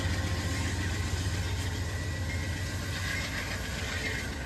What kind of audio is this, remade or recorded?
recorded